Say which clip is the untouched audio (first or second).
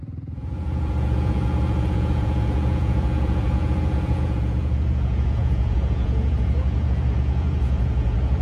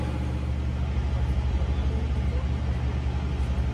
second